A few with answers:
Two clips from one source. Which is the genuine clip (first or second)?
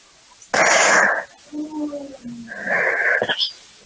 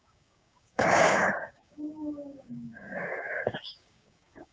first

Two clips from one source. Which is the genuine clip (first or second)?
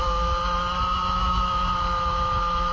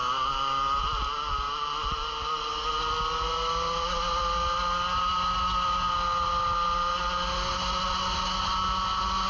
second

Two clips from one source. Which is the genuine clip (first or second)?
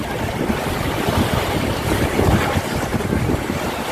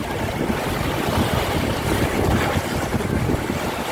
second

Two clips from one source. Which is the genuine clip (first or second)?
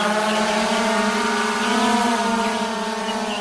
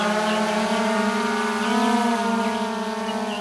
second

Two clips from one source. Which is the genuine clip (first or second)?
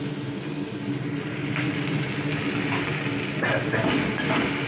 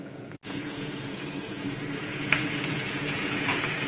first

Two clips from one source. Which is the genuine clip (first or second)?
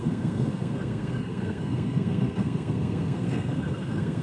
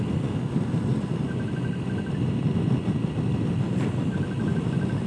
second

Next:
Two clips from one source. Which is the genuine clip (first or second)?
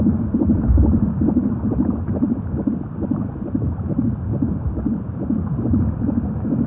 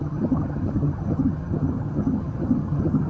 first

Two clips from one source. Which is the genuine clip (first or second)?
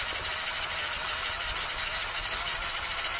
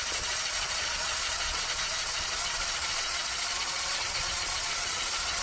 first